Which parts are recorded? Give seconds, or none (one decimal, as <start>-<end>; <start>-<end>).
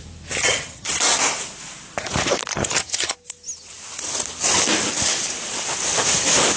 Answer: 0.0-0.4; 0.9-2.5; 3.1-6.6